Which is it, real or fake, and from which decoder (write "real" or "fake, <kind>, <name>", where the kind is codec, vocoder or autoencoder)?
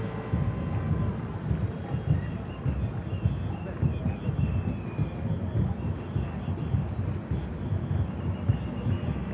real